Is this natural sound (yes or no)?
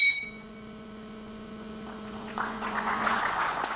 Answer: no